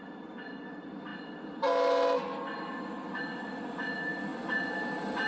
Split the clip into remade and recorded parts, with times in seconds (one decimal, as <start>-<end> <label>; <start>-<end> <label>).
0.0-5.3 recorded